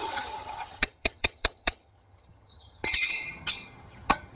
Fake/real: fake